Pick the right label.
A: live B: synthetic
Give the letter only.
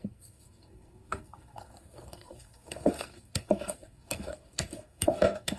B